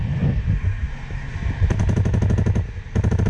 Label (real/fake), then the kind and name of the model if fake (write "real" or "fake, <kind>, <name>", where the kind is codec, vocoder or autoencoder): real